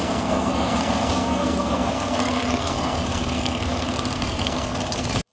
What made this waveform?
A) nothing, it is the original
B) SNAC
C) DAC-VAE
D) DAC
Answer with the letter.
B